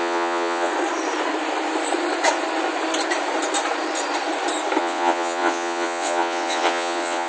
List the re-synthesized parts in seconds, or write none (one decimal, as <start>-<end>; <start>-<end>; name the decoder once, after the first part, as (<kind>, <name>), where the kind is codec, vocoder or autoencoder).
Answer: 0.0-0.7 (vocoder, WaveNeXt); 4.8-7.3